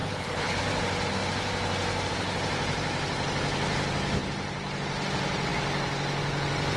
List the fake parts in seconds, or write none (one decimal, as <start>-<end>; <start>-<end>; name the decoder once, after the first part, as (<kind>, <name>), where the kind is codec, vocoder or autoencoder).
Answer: 0.0-0.6 (codec, HILCodec)